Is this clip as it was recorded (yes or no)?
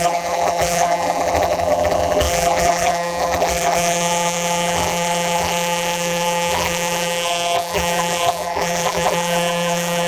no